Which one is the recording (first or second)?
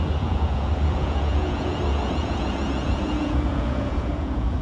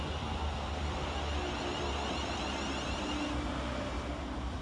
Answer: second